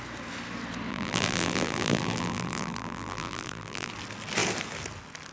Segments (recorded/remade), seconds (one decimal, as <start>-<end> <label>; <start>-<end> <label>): 0.0-0.9 recorded; 0.9-3.9 remade; 3.9-5.3 recorded